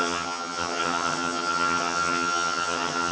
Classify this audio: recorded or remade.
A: remade